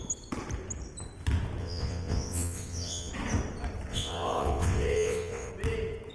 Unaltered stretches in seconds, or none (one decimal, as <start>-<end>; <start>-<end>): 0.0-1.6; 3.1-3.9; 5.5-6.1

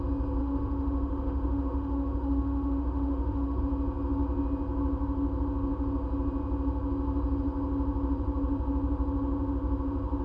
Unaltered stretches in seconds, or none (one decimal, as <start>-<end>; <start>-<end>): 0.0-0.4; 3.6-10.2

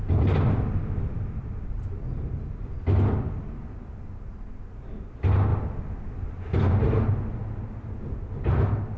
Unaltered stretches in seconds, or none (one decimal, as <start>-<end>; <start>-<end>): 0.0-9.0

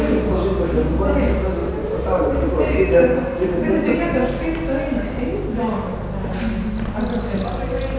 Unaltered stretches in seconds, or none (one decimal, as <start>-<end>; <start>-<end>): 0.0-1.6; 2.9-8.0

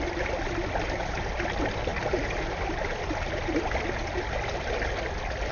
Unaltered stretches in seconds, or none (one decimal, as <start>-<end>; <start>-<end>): 0.0-5.5